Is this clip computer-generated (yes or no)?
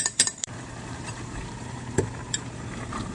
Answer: yes